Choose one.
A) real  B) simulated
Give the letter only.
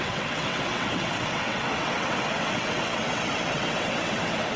B